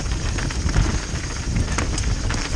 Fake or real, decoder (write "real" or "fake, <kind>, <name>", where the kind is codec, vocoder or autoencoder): real